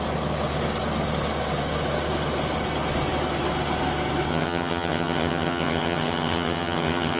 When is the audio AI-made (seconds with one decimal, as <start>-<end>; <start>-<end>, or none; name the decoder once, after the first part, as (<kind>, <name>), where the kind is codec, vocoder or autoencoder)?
4.3-7.2 (vocoder, HiFi-GAN)